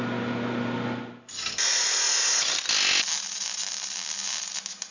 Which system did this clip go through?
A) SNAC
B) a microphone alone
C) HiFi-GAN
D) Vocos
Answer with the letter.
B